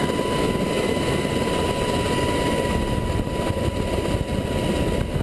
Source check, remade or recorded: recorded